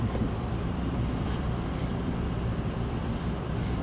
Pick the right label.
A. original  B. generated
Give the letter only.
B